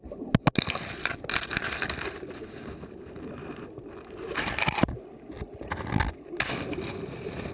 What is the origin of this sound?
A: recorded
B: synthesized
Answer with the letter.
A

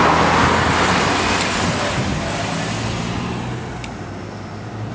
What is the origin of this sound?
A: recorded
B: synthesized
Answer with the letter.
A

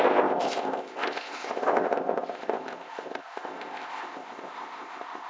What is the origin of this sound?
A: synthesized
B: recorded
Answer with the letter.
A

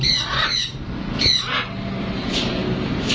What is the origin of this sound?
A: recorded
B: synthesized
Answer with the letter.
A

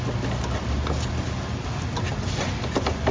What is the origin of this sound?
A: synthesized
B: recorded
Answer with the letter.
B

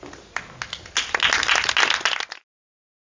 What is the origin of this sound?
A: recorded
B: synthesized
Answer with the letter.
A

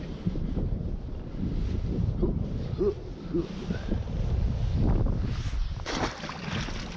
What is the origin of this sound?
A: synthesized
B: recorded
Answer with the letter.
B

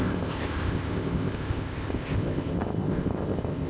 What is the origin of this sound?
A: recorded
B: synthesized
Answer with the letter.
B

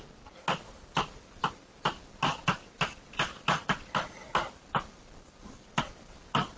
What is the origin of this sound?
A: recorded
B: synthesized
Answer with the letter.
A